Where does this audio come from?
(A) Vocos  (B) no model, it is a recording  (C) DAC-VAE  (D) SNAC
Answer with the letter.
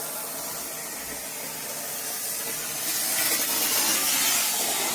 B